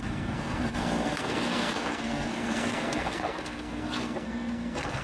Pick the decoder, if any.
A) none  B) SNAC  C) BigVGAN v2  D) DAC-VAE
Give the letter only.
B